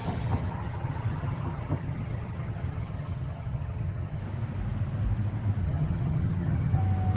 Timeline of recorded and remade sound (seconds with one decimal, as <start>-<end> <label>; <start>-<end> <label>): 0.0-4.2 remade; 4.2-5.6 recorded; 5.6-6.8 remade; 6.8-7.2 recorded